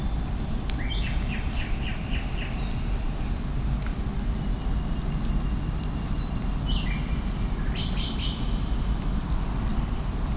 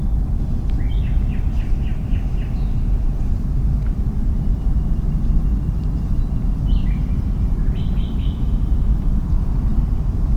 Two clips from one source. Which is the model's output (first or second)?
second